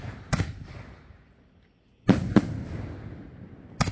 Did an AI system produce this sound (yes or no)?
no